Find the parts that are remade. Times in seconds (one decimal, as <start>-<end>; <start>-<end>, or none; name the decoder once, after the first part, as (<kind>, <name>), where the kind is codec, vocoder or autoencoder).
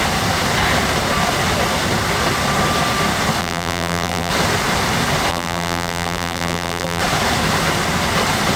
3.4-4.3 (vocoder, BigVGAN v2); 5.3-7.0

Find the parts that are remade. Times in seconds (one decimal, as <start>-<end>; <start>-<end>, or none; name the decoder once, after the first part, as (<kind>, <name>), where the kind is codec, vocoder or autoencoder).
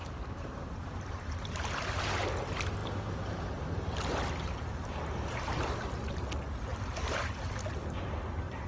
0.0-1.1 (vocoder, BigVGAN v2); 2.8-3.6; 6.7-7.3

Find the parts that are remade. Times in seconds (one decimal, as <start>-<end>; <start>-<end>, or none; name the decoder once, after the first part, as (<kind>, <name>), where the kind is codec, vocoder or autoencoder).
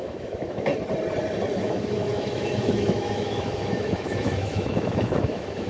0.0-0.7 (autoencoder, DAC-VAE); 1.5-5.7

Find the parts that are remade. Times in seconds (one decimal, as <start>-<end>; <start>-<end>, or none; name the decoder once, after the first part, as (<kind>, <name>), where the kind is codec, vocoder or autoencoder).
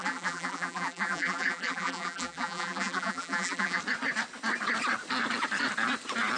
0.0-3.8 (vocoder, BigVGAN v2)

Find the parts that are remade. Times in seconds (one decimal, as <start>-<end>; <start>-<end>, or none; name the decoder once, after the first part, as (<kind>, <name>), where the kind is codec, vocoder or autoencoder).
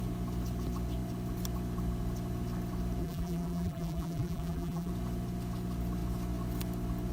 3.0-4.9 (vocoder, BigVGAN v2)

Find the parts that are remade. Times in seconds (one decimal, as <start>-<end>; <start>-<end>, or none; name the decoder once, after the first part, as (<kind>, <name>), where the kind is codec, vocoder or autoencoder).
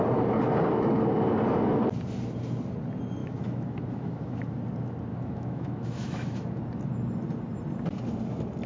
3.2-4.5 (autoencoder, DAC-VAE); 5.1-6.6